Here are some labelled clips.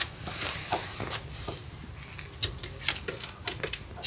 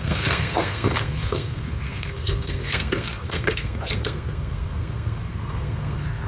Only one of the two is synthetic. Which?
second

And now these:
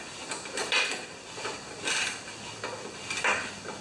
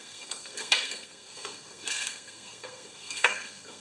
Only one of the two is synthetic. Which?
second